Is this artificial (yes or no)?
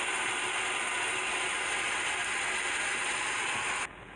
no